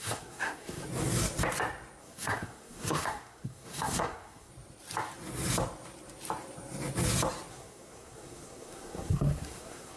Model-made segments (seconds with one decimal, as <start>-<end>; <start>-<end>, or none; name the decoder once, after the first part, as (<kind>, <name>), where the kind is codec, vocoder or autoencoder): 0.0-0.8 (codec, SNAC); 2.0-4.5; 7.5-10.0